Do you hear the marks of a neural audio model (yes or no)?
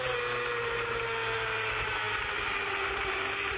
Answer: no